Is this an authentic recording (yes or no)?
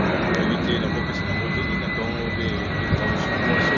yes